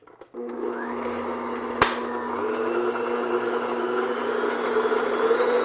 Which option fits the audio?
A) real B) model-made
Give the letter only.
A